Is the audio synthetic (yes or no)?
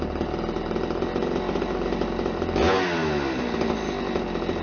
no